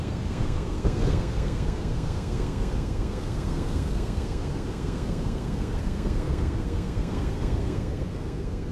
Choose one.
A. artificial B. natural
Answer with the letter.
A